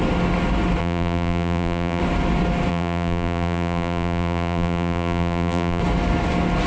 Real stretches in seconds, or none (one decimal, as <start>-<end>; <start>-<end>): 0.0-0.8; 2.0-2.7; 5.8-6.7